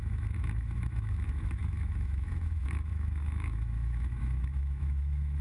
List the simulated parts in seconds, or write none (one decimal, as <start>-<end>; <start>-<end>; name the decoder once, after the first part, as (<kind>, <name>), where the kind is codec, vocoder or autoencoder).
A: 0.0-5.4 (autoencoder, DAC-VAE)